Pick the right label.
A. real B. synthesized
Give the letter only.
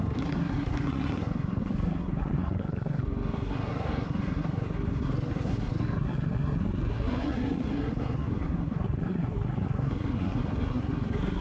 B